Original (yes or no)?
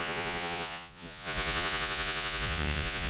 no